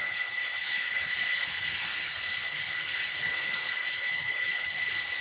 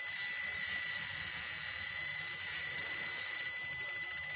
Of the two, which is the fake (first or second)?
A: first